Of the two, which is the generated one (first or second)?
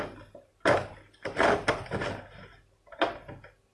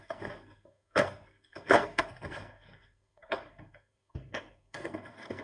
second